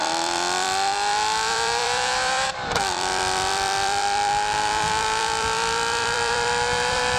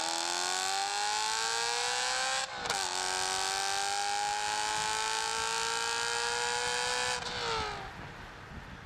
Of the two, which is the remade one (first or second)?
first